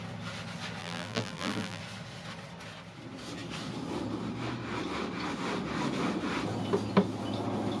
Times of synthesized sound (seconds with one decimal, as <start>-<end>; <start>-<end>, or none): 0.8-1.8